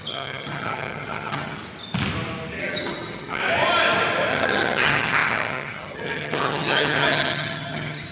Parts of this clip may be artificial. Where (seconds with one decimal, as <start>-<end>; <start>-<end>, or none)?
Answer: 0.0-1.6; 2.6-3.4; 4.3-8.1